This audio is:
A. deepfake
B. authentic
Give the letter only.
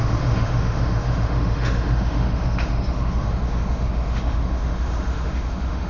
A